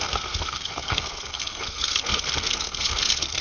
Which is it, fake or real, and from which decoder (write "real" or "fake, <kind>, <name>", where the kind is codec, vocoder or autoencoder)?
fake, codec, SNAC